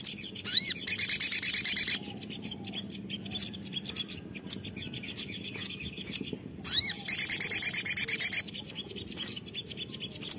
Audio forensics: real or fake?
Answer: real